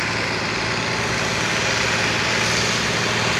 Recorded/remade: recorded